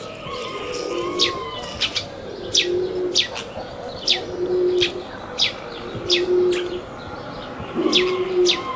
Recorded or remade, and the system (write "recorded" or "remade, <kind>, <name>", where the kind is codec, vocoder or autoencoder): recorded